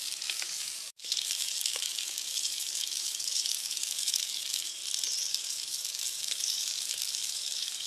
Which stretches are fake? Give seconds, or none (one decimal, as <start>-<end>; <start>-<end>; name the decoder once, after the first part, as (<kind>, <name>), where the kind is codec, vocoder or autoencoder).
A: 0.0-4.8 (codec, DAC); 5.3-7.9